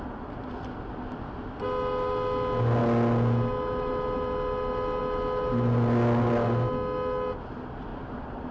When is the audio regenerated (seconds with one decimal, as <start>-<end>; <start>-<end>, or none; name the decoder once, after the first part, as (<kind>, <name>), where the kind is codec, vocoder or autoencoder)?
7.9-8.5 (vocoder, BigVGAN v2)

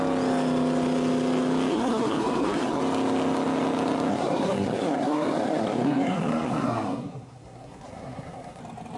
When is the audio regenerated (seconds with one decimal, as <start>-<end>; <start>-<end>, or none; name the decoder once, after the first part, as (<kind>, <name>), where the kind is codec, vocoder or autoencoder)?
1.7-2.8 (codec, SNAC); 4.1-8.6